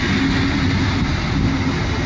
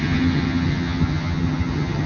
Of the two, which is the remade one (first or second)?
second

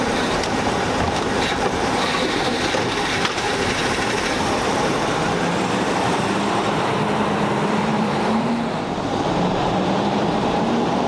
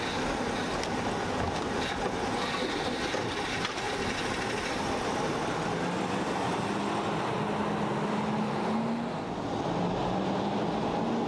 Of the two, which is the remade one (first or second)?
first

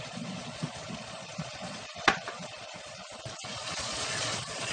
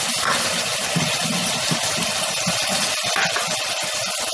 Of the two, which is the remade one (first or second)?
first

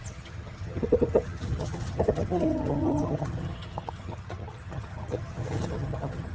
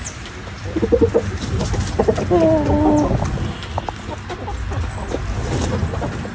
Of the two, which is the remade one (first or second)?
first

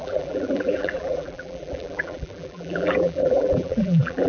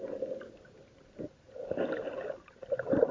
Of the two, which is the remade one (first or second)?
first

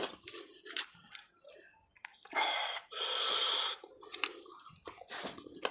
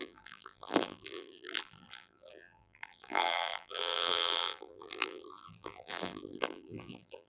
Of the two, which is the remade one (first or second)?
second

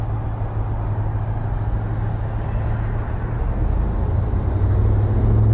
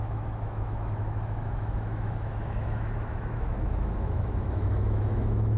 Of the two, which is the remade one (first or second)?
second